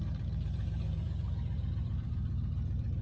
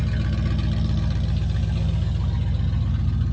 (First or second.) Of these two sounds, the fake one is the first